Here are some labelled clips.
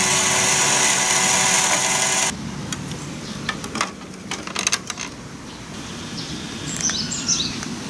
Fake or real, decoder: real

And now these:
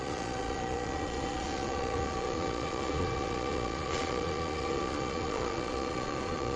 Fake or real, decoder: fake, vocoder, Vocos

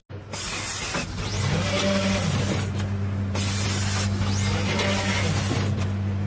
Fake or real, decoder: real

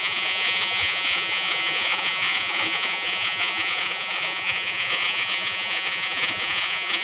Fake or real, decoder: fake, vocoder, Vocos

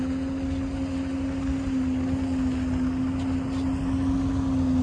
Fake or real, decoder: real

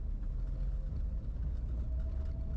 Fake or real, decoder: real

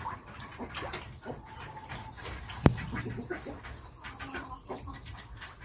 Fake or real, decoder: real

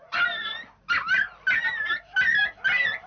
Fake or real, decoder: real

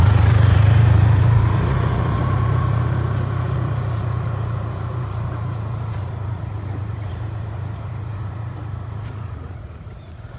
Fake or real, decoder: fake, vocoder, Vocos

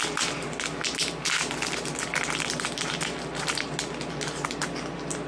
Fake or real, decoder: real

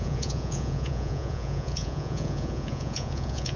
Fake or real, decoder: fake, vocoder, Vocos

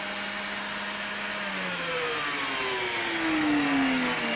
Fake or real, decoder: real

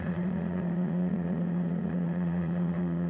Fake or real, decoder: fake, vocoder, Vocos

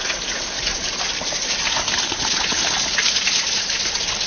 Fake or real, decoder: real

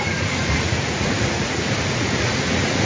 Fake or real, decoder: fake, vocoder, Vocos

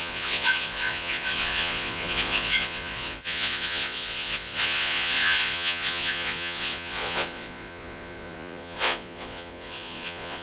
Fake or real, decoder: fake, vocoder, Vocos